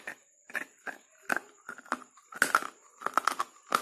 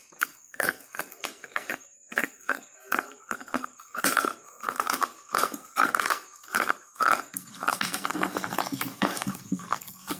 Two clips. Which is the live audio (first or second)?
first